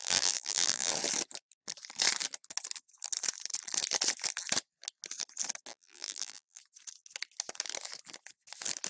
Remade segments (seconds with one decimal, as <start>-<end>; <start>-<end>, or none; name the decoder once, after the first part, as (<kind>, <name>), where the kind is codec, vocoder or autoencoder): 0.0-0.9 (vocoder, BigVGAN v2); 5.7-6.6

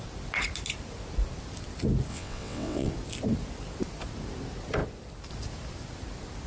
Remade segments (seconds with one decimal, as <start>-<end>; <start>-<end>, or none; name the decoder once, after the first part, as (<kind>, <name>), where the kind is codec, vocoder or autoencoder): 2.1-2.9 (vocoder, WaveNeXt)

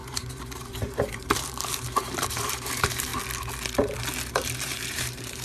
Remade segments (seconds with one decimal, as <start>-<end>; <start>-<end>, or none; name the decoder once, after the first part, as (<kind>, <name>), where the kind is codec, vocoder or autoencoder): 0.0-3.1 (vocoder, BigVGAN v2); 4.3-5.4